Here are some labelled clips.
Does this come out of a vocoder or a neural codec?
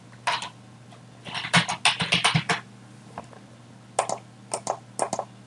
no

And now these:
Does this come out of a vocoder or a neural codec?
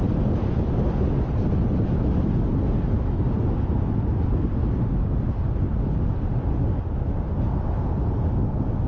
no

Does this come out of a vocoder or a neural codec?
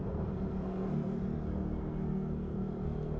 yes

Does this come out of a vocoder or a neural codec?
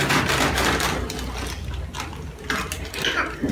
no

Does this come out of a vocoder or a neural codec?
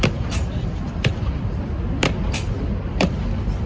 no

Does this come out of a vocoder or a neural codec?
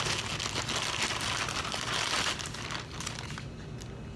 no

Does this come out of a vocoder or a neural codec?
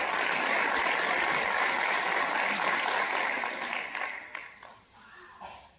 no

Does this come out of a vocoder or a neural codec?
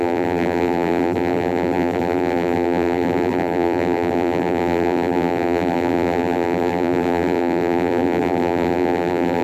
yes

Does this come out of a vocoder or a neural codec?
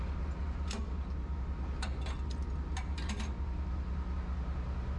no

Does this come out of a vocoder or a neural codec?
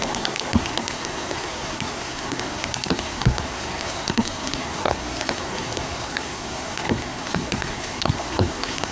yes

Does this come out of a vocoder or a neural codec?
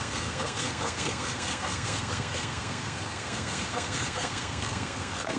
yes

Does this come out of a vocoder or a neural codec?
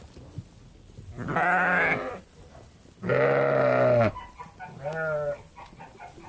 no